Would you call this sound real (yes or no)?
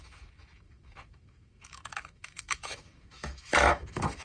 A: no